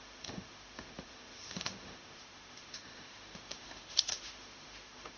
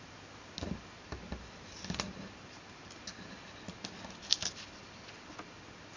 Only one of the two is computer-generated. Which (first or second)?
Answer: first